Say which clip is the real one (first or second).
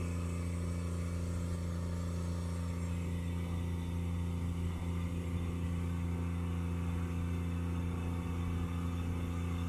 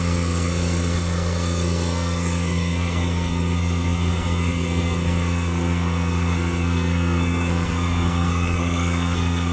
first